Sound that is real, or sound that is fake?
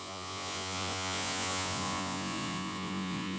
fake